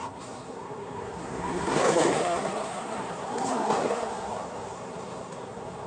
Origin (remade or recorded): remade